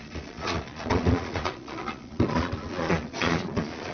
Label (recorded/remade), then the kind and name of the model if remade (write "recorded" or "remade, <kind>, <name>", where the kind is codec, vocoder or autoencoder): remade, vocoder, Vocos